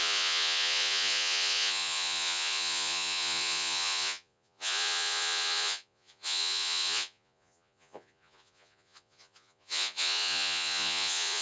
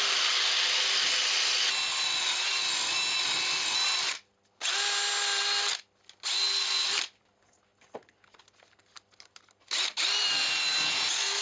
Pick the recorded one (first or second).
second